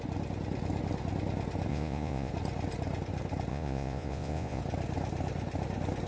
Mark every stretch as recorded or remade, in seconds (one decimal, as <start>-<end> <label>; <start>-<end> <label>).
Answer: 0.0-1.7 recorded; 1.7-2.3 remade; 2.3-3.5 recorded; 3.5-4.6 remade; 4.6-6.1 recorded